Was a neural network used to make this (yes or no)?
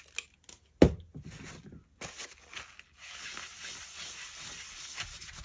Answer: no